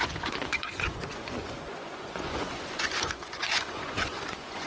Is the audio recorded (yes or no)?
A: no